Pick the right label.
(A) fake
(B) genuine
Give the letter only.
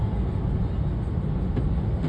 B